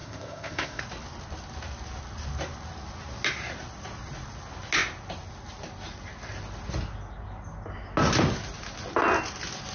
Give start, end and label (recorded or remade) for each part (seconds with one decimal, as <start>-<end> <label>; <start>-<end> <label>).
0.0-0.8 remade; 0.8-9.7 recorded